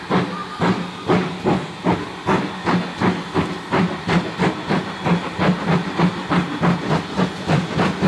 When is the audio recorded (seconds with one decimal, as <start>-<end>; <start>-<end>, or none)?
0.0-8.1